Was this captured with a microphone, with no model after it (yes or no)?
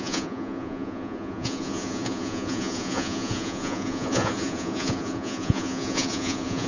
no